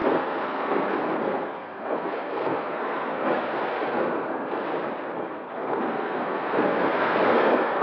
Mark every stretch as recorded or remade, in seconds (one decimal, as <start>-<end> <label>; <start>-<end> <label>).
0.0-4.7 remade; 4.7-5.3 recorded; 5.3-7.8 remade